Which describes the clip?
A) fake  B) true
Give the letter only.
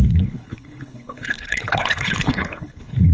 A